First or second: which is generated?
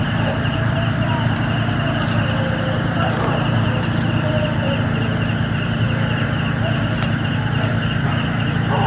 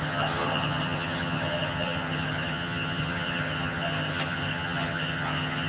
second